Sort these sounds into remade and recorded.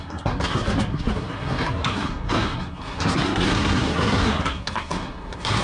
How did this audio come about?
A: remade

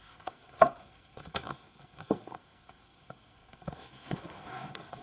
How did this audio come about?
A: remade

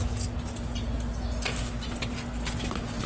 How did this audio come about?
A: recorded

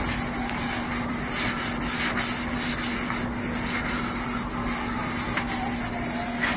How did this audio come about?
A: recorded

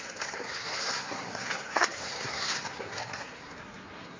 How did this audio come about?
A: remade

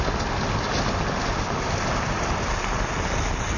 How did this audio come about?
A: recorded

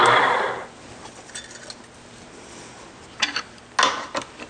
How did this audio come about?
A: recorded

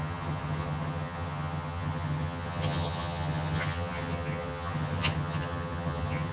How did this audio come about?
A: remade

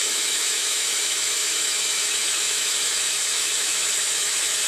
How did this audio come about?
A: remade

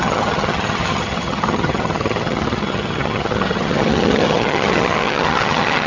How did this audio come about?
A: remade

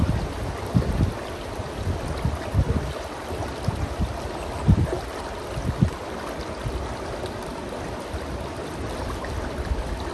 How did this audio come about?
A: recorded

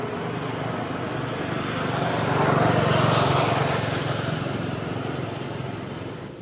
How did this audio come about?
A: recorded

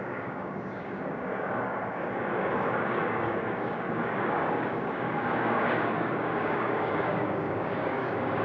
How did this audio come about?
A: remade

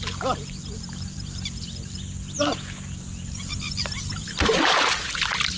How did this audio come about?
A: recorded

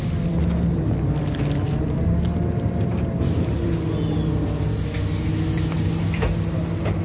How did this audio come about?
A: recorded